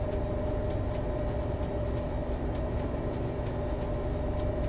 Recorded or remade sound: recorded